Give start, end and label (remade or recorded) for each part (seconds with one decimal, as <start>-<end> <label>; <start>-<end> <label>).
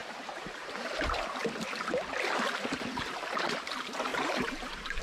0.0-0.9 remade; 0.9-4.1 recorded; 4.1-5.0 remade